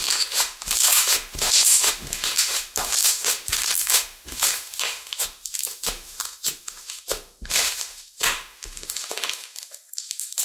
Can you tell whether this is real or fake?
fake